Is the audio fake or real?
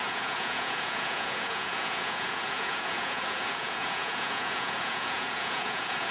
fake